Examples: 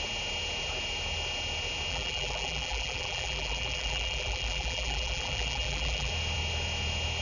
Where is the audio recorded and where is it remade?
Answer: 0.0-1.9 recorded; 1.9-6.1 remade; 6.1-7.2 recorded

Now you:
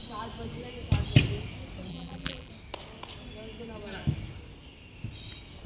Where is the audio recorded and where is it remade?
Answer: 0.0-1.9 recorded; 1.9-2.5 remade; 2.5-5.7 recorded

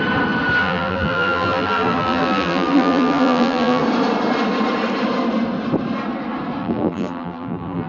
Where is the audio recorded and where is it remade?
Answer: 0.0-0.6 recorded; 0.6-3.8 remade; 3.8-6.6 recorded; 6.6-7.9 remade

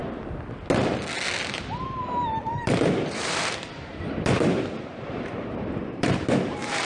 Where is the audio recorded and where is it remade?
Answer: 0.0-2.4 recorded; 2.4-6.8 remade

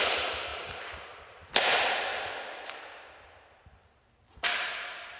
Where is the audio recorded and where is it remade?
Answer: 0.0-2.1 remade; 2.1-5.2 recorded

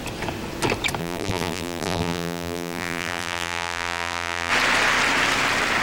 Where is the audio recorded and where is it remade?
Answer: 0.0-1.0 recorded; 1.0-4.5 remade; 4.5-5.8 recorded

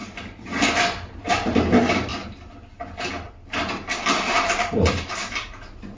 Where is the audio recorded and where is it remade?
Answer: 0.0-2.1 remade; 2.1-3.7 recorded; 3.7-6.0 remade

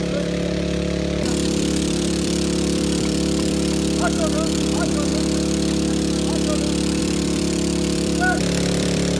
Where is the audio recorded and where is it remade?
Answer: 0.0-5.1 remade; 5.1-7.0 recorded; 7.0-9.2 remade